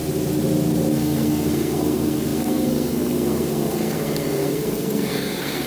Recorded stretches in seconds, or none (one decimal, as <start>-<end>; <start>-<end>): 0.0-0.9